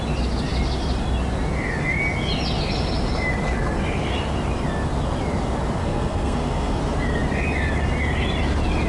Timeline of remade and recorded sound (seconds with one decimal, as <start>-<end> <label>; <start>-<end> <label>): 0.0-5.8 recorded; 5.8-6.8 remade; 6.8-8.9 recorded